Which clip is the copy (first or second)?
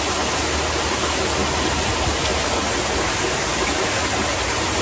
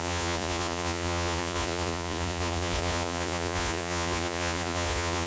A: second